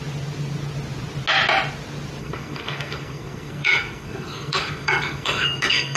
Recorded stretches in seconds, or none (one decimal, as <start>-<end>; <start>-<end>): 0.0-2.2